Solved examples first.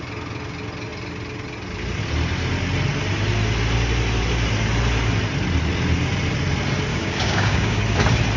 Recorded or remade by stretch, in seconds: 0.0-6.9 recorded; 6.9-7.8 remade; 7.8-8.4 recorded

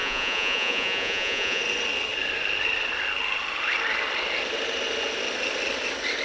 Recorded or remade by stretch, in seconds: 0.0-1.6 remade; 1.6-6.2 recorded

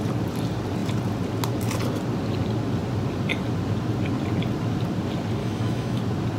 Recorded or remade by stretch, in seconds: 0.0-5.4 recorded; 5.4-6.0 remade; 6.0-6.4 recorded

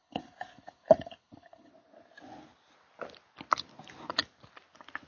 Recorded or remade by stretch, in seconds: 0.0-1.7 remade; 1.7-5.1 recorded

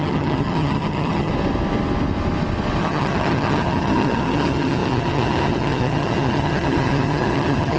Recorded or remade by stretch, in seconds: 0.0-1.3 remade; 1.3-2.8 recorded; 2.8-7.8 remade

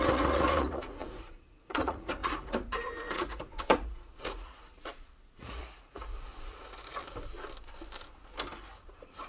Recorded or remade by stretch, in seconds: 0.0-7.0 remade; 7.0-8.8 recorded; 8.8-9.3 remade